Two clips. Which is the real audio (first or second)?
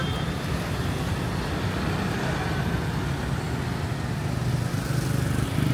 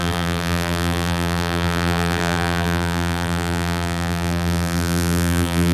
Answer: first